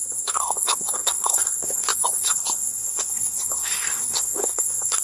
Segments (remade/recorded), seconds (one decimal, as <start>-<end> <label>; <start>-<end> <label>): 0.0-5.0 remade